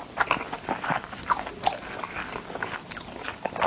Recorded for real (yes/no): yes